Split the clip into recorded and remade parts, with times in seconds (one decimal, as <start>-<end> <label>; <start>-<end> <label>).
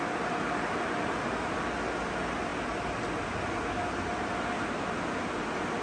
0.0-5.8 recorded